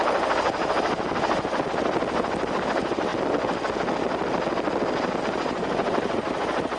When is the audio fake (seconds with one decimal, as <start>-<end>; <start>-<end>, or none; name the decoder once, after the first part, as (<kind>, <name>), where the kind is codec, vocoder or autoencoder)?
0.0-0.6 (vocoder, BigVGAN v2); 2.6-3.1; 5.2-6.8